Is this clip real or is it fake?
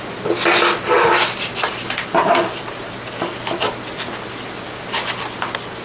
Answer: real